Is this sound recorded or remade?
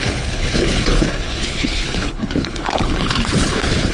remade